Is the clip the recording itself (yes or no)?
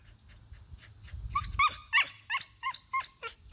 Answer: yes